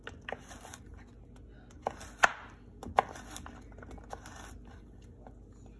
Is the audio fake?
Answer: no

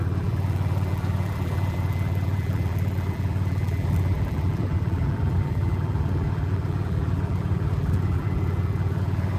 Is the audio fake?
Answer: yes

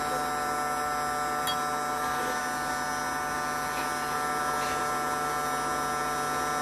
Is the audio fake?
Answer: no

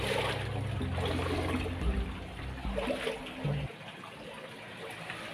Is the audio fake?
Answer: no